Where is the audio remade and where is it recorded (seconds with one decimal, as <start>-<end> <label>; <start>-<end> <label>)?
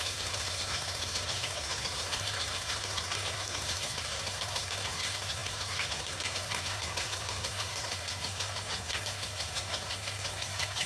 0.0-10.9 remade